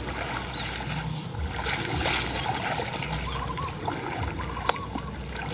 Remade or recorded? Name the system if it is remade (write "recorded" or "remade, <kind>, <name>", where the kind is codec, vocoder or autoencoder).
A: recorded